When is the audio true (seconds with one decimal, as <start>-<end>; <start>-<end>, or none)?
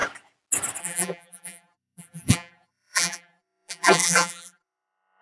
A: 0.0-0.8